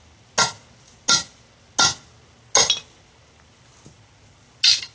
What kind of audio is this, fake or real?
real